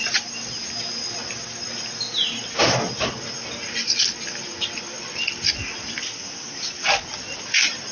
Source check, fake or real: real